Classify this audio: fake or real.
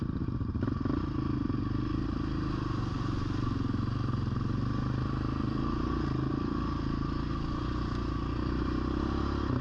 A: real